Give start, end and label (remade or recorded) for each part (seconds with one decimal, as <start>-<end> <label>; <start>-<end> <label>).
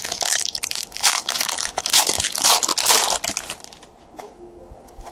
0.0-2.7 remade; 2.7-4.0 recorded; 4.0-5.1 remade